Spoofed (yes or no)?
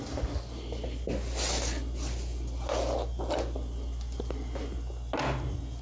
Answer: no